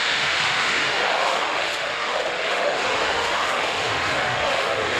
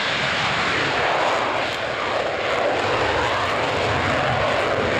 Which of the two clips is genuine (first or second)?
second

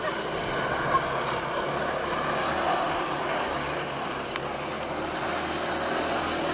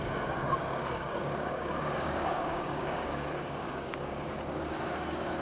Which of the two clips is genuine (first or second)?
first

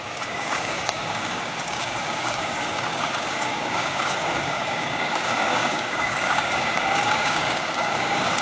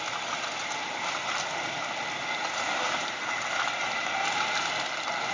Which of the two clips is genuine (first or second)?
second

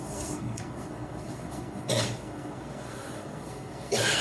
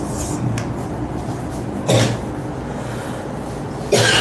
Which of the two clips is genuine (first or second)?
second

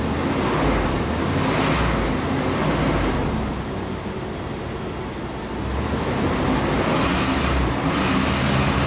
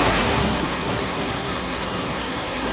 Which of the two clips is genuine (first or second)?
first